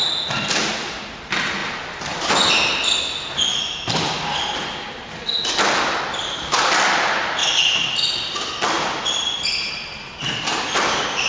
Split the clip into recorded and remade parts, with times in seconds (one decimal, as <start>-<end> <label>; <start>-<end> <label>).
0.0-11.3 recorded